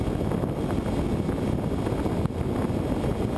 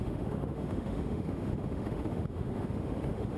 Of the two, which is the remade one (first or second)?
second